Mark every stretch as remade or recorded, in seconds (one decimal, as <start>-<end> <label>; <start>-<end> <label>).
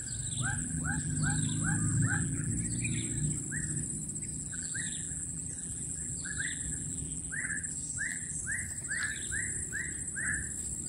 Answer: 0.0-0.6 recorded; 0.6-1.1 remade; 1.1-1.9 recorded; 1.9-2.5 remade; 2.5-4.3 recorded; 4.3-8.4 remade; 8.4-10.9 recorded